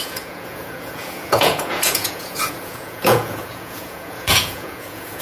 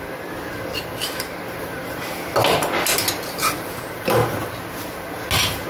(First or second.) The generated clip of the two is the first